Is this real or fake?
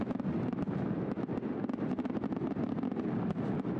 real